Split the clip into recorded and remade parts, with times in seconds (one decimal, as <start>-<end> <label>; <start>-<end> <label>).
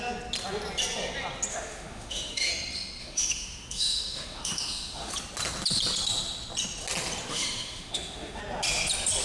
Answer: 0.0-1.5 recorded; 1.5-2.5 remade; 2.5-3.0 recorded; 3.0-5.1 remade; 5.1-7.3 recorded; 7.3-8.4 remade; 8.4-9.2 recorded